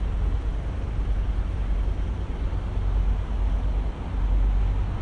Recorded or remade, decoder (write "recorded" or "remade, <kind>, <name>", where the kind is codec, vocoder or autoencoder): recorded